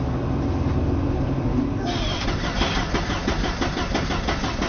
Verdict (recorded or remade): recorded